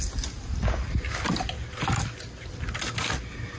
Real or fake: real